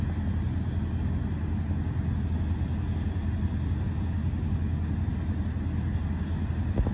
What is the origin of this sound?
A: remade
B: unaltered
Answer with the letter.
B